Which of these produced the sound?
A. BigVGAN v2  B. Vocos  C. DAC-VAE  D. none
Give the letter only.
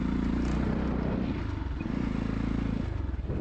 D